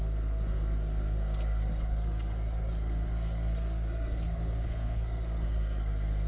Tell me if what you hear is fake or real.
fake